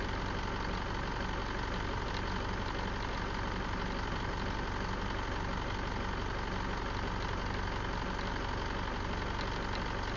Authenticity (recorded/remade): recorded